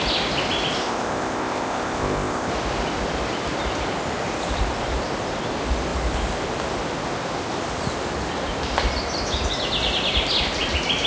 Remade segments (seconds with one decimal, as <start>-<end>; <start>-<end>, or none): 0.8-2.5